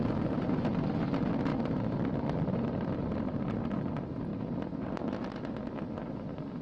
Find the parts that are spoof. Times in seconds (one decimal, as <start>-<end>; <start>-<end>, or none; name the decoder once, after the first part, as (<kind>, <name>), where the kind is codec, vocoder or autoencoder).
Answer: 0.0-0.5 (vocoder, BigVGAN v2); 1.5-3.1